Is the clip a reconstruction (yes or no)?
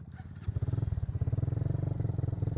no